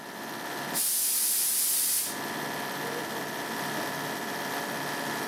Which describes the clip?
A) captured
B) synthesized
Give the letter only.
A